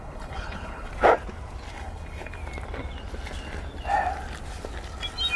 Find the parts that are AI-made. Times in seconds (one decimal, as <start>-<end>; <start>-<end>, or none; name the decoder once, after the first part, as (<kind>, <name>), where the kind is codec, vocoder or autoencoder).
0.0-0.9 (codec, HILCodec); 1.7-2.4